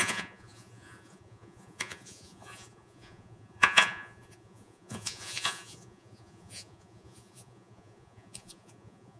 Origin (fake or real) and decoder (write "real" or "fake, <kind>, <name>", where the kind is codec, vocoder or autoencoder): fake, vocoder, Vocos